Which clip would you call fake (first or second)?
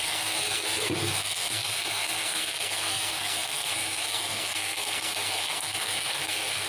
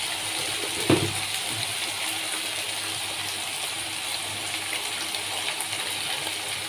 first